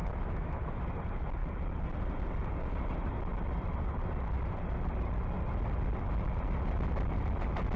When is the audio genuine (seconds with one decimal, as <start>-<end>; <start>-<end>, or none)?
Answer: 0.8-7.8

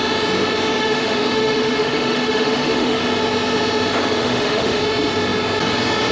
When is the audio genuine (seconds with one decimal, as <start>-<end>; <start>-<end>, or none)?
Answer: 0.0-0.8; 3.0-4.2; 4.8-6.1

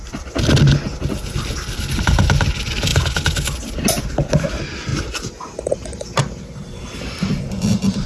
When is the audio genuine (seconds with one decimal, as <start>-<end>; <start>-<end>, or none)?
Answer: 0.0-8.1

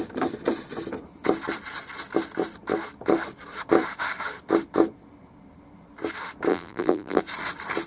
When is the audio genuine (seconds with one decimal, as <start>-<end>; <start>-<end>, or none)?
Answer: 0.0-6.5; 7.2-7.9

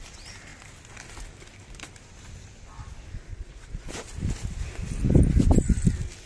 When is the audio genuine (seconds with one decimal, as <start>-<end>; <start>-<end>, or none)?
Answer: 0.0-3.3; 3.9-6.3

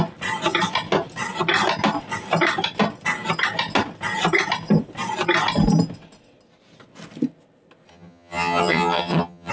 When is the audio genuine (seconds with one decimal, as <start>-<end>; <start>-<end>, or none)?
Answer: 0.0-7.9

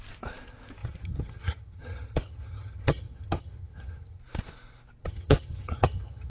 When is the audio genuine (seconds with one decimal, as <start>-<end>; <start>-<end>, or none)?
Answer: 0.0-0.8; 4.2-5.0